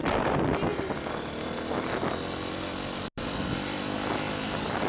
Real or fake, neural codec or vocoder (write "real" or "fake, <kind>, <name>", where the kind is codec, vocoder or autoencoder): real